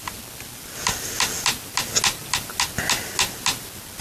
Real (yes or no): yes